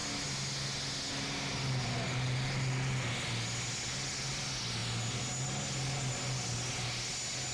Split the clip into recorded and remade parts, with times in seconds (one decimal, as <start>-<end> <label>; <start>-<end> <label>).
0.0-7.5 recorded